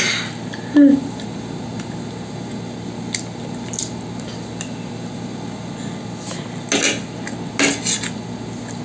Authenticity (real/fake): real